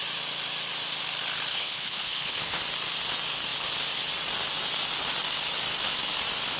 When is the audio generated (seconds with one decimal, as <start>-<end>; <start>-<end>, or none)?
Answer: 1.5-2.6